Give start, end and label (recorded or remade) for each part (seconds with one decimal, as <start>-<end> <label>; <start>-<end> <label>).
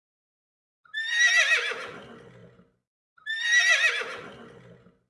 0.0-5.1 recorded